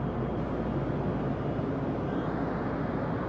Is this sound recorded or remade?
recorded